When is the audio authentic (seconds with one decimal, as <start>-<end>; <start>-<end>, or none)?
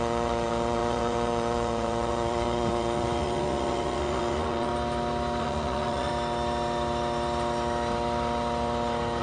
4.7-5.4; 6.1-9.2